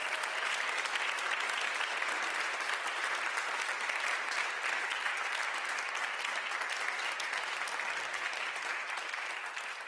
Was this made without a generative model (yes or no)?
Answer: yes